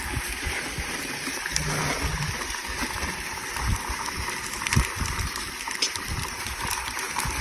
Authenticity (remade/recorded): remade